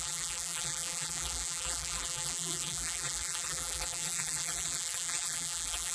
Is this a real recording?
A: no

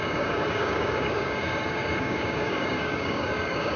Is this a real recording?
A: no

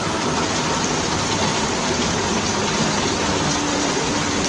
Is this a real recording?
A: yes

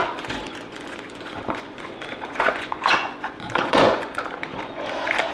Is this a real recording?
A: no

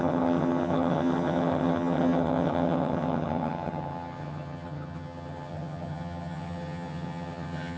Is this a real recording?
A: no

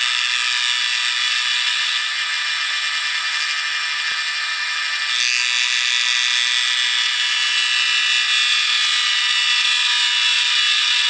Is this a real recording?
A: yes